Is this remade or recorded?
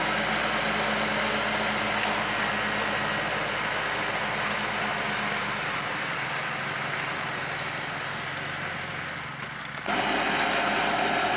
recorded